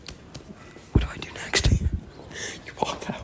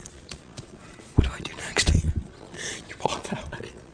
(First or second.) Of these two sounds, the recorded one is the first